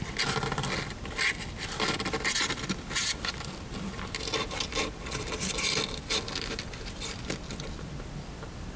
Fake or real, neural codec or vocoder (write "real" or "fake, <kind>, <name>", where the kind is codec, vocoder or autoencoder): real